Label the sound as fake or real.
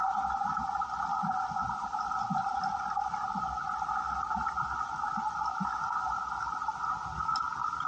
real